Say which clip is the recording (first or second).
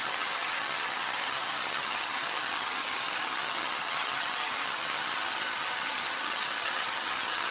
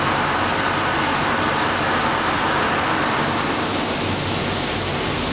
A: second